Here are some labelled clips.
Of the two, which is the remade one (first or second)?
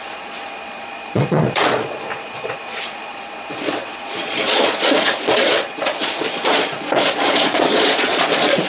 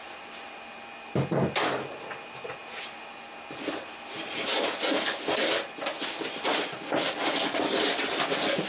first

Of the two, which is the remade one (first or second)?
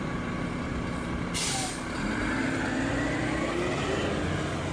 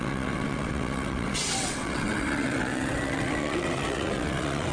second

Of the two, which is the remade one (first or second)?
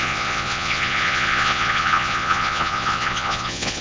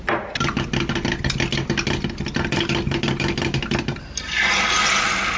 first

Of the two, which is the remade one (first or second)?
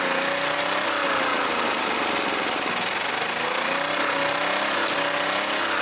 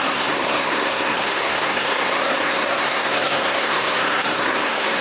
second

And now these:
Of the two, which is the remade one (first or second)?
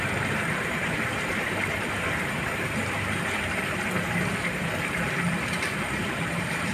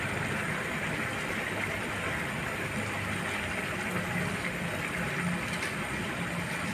first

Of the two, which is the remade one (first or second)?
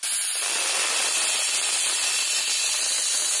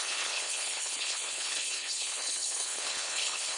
second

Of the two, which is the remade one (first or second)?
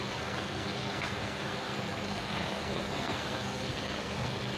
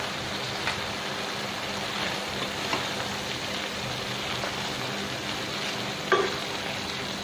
first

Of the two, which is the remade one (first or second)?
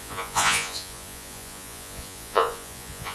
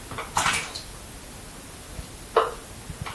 first